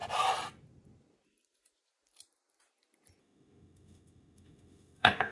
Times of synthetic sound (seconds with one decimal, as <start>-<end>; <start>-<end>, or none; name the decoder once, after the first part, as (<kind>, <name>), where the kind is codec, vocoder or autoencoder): 3.2-5.3 (autoencoder, DAC-VAE)

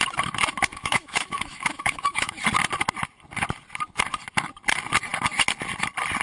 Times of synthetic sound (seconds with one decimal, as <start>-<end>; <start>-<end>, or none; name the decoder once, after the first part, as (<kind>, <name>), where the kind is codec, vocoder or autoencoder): 0.7-2.4 (autoencoder, DAC-VAE)

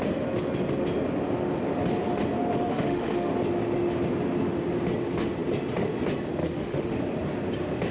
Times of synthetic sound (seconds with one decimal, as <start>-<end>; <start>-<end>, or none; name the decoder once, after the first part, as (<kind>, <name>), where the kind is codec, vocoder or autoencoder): 2.5-3.3 (autoencoder, DAC-VAE); 6.4-7.0

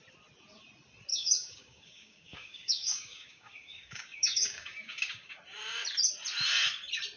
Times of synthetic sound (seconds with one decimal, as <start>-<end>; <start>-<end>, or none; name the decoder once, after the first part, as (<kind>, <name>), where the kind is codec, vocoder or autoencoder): 1.1-5.4 (codec, DAC)

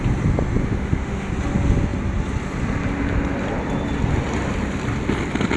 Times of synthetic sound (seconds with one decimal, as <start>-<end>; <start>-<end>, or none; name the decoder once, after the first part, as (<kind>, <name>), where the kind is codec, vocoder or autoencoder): 0.6-1.3 (autoencoder, DAC-VAE)

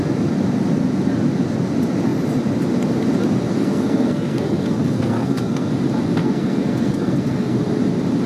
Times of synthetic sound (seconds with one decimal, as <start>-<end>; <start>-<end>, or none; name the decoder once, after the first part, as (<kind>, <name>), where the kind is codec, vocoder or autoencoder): 3.5-5.7 (codec, SNAC); 6.2-7.6

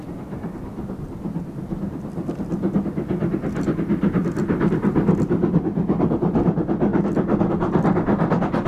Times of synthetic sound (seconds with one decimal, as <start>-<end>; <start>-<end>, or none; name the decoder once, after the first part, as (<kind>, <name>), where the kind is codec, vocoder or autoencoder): none

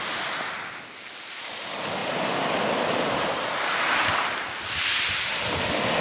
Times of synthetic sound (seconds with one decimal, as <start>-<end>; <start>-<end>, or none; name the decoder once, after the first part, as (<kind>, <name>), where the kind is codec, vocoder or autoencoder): none